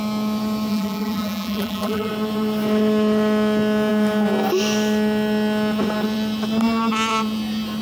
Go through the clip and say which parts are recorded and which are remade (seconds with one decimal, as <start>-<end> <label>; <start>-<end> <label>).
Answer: 0.0-0.7 recorded; 0.7-2.1 remade; 2.1-7.8 recorded